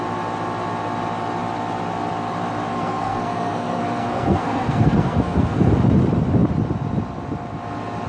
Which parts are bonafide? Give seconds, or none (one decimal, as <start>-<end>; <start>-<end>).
0.0-2.7; 5.7-8.1